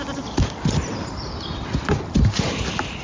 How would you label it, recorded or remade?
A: recorded